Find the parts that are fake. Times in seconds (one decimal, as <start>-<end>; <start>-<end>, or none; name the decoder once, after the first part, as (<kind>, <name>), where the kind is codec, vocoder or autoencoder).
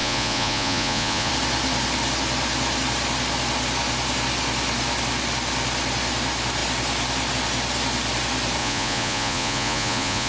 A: 0.0-1.3 (vocoder, Vocos); 8.6-10.3